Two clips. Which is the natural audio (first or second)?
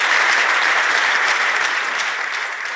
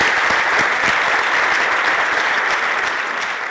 second